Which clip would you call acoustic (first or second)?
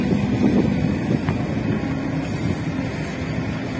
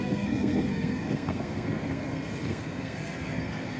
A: first